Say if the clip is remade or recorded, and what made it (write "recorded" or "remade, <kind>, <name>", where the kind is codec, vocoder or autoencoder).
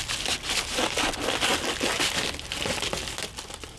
recorded